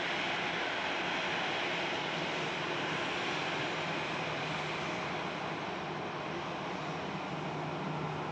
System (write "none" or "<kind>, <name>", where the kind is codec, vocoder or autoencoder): none